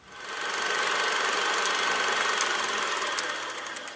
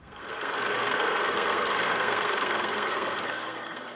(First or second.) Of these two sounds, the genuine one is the first